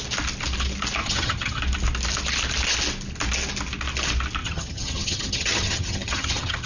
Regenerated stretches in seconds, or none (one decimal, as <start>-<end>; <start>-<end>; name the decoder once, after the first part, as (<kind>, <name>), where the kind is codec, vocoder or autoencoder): 1.0-1.6 (vocoder, HiFi-GAN); 4.4-6.7